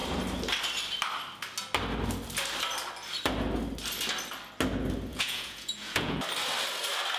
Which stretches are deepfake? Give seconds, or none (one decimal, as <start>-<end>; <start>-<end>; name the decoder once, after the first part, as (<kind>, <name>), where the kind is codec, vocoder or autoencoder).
5.1-6.2 (vocoder, Vocos)